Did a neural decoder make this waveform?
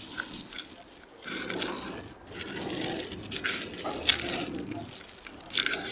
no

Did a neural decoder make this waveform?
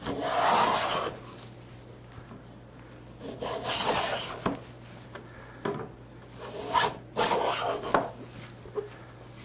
no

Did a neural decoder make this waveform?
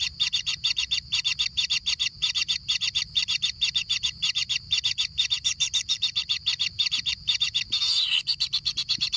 no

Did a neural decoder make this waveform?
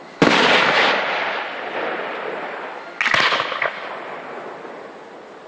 no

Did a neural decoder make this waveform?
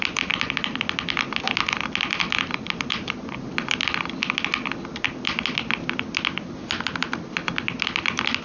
no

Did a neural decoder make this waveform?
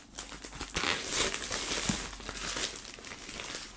no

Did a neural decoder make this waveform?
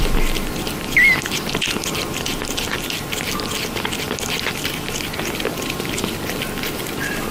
no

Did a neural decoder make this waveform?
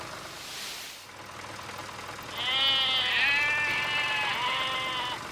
no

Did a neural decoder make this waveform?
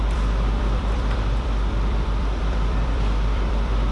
yes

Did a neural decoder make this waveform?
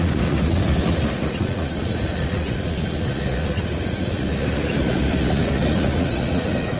yes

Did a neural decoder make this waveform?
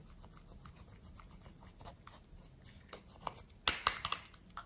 no